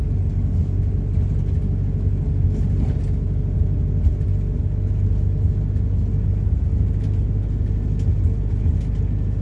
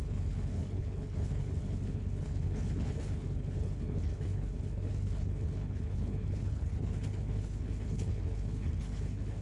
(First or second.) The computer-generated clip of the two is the second